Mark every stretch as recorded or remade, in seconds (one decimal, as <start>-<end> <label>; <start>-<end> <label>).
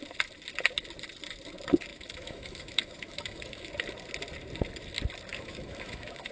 0.0-1.9 recorded; 1.9-3.7 remade; 3.7-5.3 recorded; 5.3-6.3 remade